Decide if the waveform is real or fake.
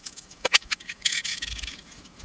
fake